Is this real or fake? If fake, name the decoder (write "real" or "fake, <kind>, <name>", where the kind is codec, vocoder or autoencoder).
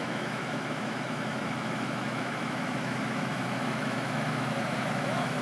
fake, autoencoder, DAC-VAE